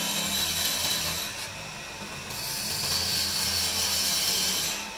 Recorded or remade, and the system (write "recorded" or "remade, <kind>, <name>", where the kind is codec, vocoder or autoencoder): recorded